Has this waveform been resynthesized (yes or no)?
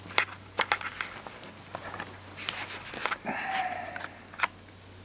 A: no